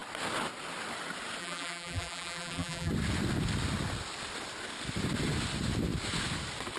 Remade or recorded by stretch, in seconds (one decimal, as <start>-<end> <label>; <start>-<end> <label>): 0.0-1.4 recorded; 1.4-2.9 remade; 2.9-6.8 recorded